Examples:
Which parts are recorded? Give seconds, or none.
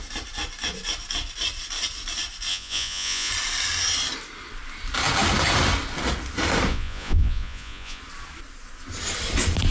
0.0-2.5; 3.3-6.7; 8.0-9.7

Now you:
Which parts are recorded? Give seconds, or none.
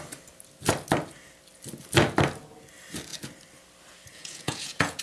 0.0-4.1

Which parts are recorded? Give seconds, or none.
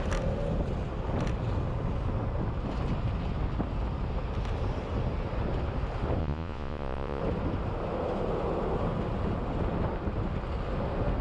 0.0-6.2; 7.2-11.2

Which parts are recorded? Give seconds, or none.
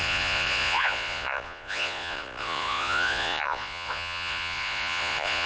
none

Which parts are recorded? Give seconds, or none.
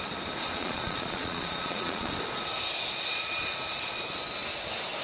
0.0-0.5; 2.1-5.0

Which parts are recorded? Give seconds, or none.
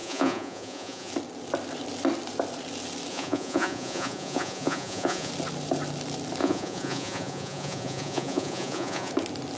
1.1-3.1; 5.3-6.4; 9.1-9.6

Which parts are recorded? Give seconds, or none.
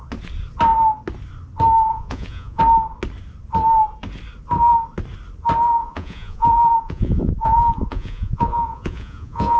0.0-1.9; 2.6-5.8